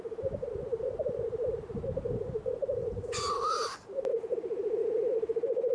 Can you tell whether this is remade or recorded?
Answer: recorded